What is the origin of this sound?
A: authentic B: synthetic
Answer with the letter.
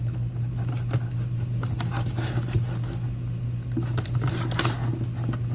A